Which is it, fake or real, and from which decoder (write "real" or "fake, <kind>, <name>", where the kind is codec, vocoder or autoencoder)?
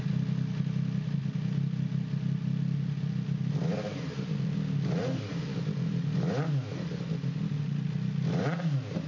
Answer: real